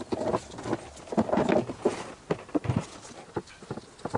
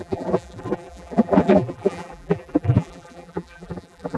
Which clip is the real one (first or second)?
first